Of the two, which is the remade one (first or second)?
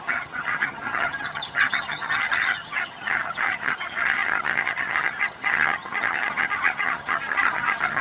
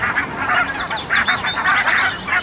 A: first